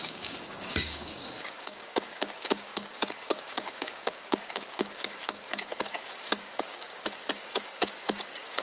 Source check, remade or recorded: remade